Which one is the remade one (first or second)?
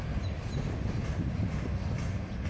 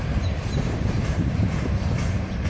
second